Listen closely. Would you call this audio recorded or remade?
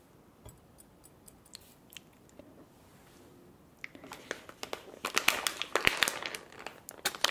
recorded